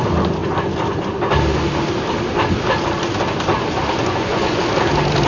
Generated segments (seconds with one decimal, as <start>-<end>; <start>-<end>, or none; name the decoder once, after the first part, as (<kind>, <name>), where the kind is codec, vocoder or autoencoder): 4.0-4.6 (vocoder, Vocos)